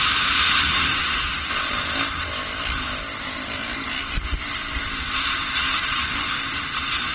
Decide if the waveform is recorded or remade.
recorded